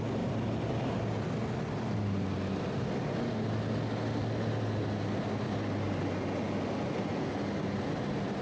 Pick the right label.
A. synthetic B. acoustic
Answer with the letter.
B